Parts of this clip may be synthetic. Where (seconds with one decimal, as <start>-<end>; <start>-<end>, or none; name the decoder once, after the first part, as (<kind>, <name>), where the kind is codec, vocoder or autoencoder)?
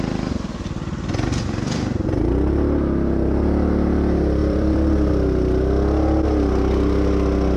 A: 4.4-5.1 (vocoder, BigVGAN v2)